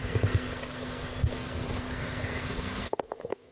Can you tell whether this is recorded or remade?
remade